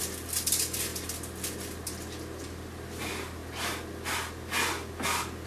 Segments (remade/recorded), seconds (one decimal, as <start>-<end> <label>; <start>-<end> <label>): 0.0-5.5 recorded